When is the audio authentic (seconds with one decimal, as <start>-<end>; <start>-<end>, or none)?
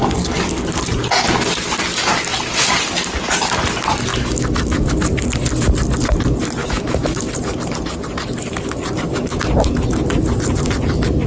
0.0-4.1; 4.9-6.6; 7.2-11.3